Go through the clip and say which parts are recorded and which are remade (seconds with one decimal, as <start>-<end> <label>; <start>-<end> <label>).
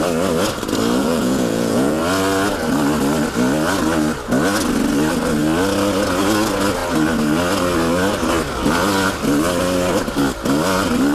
0.0-1.0 recorded; 1.0-2.0 remade; 2.0-11.1 recorded